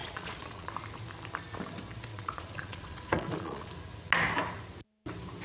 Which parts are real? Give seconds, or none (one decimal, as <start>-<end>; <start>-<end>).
0.7-2.1; 3.7-5.4